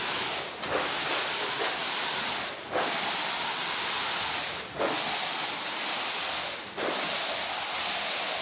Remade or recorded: recorded